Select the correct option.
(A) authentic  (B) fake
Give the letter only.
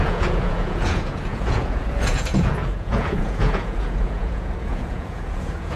B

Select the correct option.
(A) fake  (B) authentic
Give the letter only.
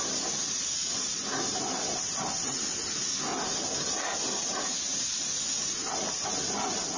B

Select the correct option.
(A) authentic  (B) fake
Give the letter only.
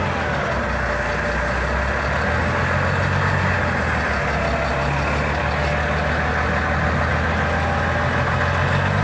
A